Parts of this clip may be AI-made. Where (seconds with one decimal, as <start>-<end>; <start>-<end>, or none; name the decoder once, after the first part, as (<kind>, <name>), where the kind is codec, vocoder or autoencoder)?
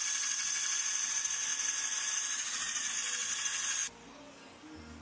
none